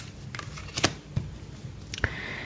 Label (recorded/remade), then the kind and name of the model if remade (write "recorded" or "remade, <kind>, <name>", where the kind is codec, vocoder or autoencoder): recorded